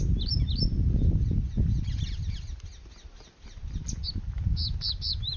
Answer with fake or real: real